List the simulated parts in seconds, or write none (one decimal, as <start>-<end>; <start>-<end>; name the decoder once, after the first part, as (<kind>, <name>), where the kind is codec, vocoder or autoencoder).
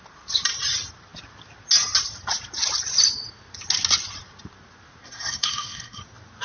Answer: 5.0-6.0 (codec, SNAC)